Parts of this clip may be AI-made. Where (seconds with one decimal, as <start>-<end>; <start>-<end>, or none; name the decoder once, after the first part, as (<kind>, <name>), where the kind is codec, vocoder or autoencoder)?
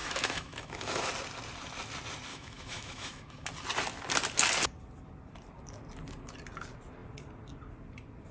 0.0-1.1 (autoencoder, DAC-VAE); 2.3-3.5